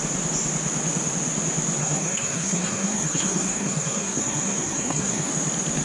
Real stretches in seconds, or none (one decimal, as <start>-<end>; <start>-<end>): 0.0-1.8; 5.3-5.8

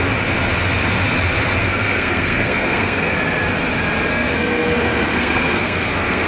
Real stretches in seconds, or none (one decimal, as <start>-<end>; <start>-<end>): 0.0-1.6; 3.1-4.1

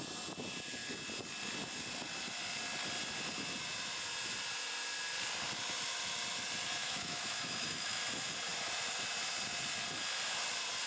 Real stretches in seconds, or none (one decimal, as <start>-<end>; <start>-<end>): 0.0-6.8; 8.0-10.9